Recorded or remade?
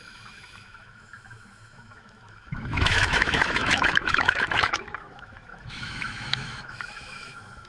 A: remade